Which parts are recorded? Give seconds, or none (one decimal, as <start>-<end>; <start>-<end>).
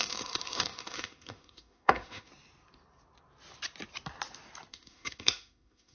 2.3-4.7